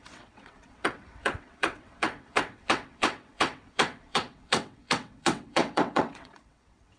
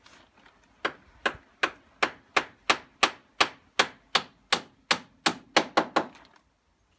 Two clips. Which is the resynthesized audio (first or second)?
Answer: first